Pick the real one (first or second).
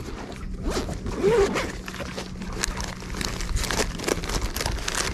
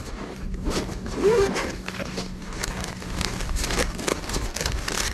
first